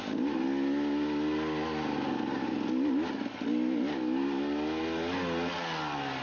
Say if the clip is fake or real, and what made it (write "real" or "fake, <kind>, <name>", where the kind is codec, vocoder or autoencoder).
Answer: real